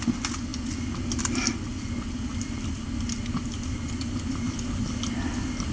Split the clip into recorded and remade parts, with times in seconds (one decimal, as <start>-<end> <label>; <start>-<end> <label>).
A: 0.0-5.7 recorded